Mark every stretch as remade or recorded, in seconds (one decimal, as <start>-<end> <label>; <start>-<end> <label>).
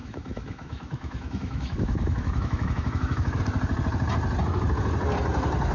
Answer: 0.0-3.4 remade; 3.4-5.7 recorded